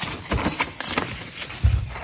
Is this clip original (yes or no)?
yes